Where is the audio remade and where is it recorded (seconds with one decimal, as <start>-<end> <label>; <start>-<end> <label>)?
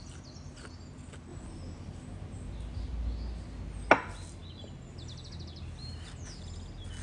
0.0-7.0 recorded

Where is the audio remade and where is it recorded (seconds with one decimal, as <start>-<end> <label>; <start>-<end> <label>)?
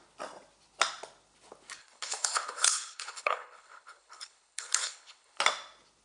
0.0-1.8 recorded; 1.8-5.4 remade; 5.4-6.0 recorded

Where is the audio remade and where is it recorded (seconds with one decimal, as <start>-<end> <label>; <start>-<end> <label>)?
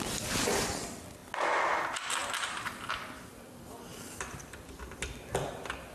0.0-3.9 recorded; 3.9-4.7 remade; 4.7-5.9 recorded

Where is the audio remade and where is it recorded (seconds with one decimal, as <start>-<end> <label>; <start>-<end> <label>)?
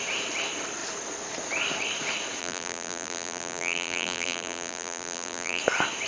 0.0-2.4 recorded; 2.4-5.6 remade; 5.6-6.1 recorded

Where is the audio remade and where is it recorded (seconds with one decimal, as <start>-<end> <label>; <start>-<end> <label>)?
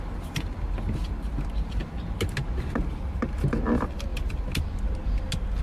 0.0-5.6 recorded